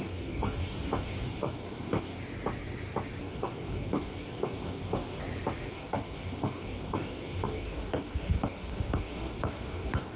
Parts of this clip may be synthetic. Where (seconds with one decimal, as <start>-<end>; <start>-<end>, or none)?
0.0-2.2; 3.2-5.2; 5.7-10.2